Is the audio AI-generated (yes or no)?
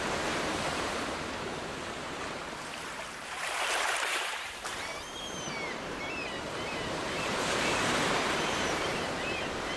yes